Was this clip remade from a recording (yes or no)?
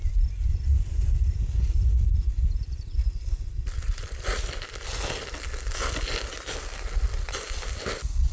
no